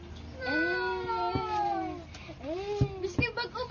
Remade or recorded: recorded